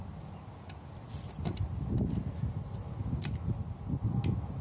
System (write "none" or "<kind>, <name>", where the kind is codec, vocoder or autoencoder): none